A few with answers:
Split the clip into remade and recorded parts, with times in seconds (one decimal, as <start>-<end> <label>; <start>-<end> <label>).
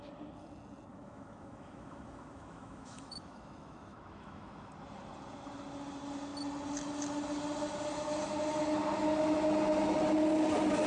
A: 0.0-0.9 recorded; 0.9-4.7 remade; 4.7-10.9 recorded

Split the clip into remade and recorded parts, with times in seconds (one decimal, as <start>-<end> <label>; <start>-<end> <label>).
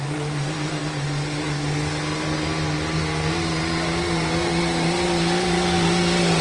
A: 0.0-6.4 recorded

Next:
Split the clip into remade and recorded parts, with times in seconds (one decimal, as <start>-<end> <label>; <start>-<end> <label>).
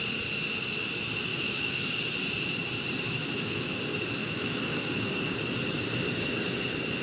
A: 0.0-1.3 recorded; 1.3-1.9 remade; 1.9-3.2 recorded; 3.2-3.8 remade; 3.8-4.2 recorded; 4.2-5.1 remade; 5.1-7.0 recorded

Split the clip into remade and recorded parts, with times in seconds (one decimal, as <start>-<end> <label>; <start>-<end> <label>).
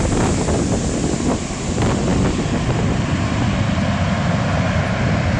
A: 0.0-5.4 recorded